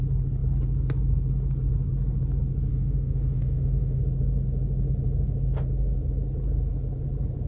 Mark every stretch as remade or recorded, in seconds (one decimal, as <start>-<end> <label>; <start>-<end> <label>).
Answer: 0.0-2.7 recorded; 2.7-4.0 remade; 4.0-7.5 recorded